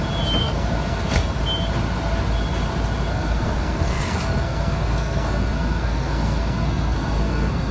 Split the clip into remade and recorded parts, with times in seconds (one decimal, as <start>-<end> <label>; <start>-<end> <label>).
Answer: 0.0-0.4 recorded; 0.4-1.4 remade; 1.4-3.1 recorded; 3.1-7.7 remade